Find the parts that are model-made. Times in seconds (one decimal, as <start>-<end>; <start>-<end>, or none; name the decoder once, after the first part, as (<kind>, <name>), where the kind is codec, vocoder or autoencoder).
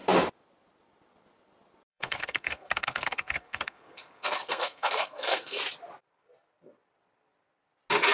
1.9-5.6 (codec, SNAC)